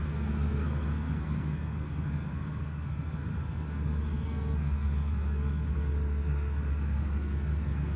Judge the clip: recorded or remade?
remade